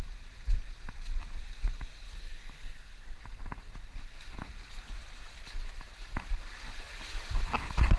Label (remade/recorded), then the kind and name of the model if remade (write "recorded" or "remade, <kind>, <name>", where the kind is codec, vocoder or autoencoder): recorded